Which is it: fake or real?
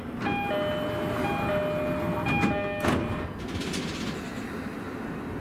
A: real